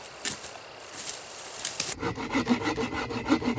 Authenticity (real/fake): fake